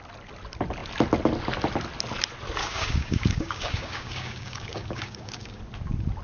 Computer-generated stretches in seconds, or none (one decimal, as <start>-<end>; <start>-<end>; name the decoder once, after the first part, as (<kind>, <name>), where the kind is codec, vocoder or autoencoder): 2.6-5.6 (codec, DAC)